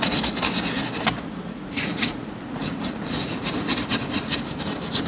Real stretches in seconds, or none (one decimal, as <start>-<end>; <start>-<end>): 0.0-1.4; 4.5-5.1